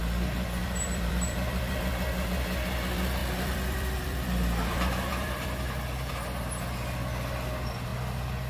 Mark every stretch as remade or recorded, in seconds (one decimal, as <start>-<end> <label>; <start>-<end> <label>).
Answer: 0.0-0.6 recorded; 0.6-1.8 remade; 1.8-3.2 recorded; 3.2-6.1 remade; 6.1-8.5 recorded